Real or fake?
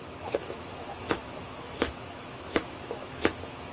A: fake